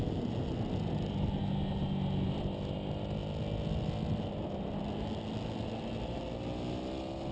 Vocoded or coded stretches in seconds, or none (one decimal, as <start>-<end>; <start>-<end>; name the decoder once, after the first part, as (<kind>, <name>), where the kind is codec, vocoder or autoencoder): none